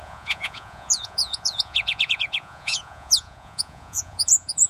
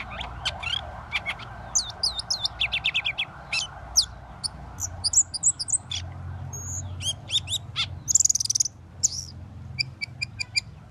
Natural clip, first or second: second